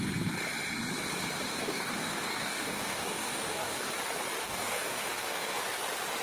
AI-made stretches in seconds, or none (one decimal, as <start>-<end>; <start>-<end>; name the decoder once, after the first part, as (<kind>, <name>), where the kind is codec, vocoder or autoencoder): 1.5-3.9 (codec, DAC); 4.4-5.6